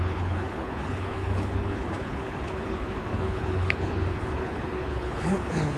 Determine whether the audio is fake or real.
fake